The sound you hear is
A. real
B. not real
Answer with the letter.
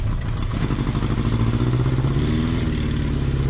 A